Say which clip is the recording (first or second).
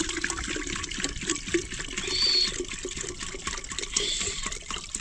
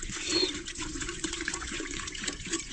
first